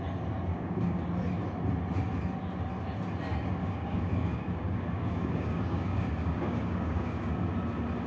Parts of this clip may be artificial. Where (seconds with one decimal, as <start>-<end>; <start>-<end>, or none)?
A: 0.5-1.0; 3.6-7.5